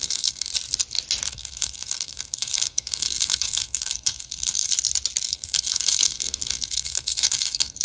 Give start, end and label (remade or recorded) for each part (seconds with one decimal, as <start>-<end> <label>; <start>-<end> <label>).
0.0-0.5 remade; 0.5-1.3 recorded; 1.3-4.7 remade; 4.7-5.2 recorded; 5.2-7.8 remade